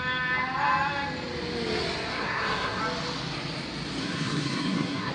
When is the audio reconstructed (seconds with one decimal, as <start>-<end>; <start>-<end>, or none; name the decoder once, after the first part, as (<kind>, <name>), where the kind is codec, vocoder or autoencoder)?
2.1-2.8 (codec, SNAC); 4.0-5.1